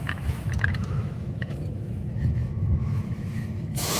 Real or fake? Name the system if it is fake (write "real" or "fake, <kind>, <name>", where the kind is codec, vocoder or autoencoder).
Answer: fake, autoencoder, DAC-VAE